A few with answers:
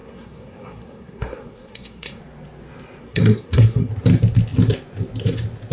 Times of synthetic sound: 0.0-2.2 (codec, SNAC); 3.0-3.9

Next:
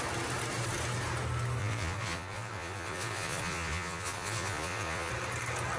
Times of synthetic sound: 1.6-5.1 (vocoder, Vocos)